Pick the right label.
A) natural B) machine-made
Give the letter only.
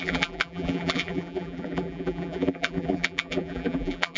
B